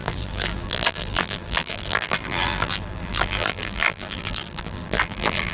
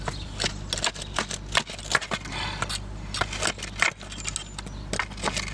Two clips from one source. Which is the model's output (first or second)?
first